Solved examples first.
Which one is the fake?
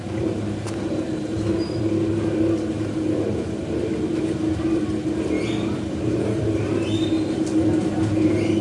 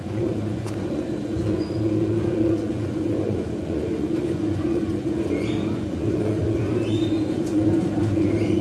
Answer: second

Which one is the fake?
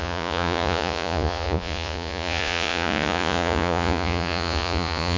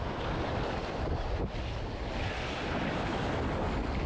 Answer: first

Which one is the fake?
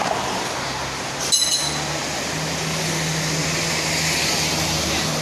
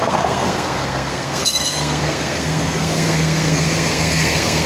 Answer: second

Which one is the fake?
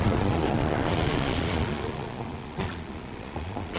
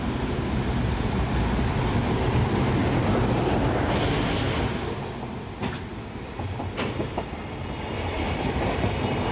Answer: first